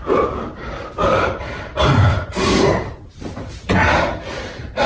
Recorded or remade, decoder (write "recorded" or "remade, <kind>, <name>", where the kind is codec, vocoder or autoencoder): remade, vocoder, BigVGAN v2